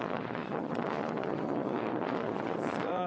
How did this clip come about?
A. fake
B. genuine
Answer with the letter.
A